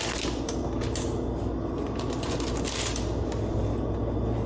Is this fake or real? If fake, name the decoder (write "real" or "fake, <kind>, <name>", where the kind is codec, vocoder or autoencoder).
real